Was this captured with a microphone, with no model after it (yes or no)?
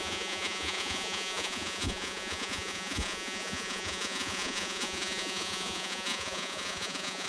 no